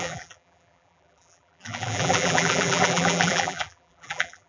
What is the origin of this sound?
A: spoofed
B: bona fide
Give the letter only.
A